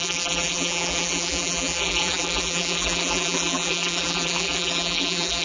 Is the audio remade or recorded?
remade